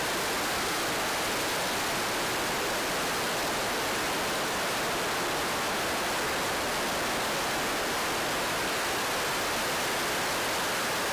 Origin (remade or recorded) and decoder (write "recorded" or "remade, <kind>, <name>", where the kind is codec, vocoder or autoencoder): recorded